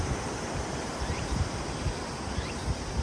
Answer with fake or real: real